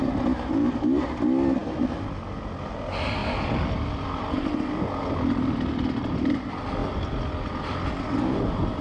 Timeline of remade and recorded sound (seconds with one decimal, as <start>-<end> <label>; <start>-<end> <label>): 0.0-8.8 recorded